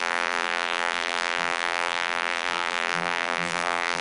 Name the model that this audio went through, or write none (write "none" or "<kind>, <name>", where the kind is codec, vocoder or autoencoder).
vocoder, BigVGAN v2